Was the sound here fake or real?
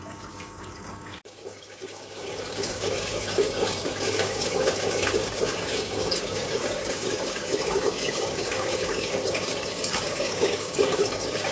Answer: fake